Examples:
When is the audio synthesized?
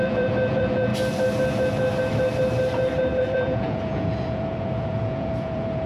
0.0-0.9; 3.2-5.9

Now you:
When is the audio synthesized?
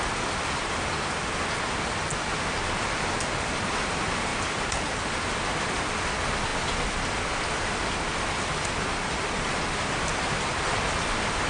none